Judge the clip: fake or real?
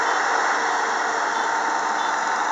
real